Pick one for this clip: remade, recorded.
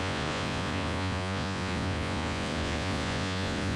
remade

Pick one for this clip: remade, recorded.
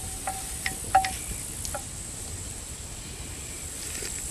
recorded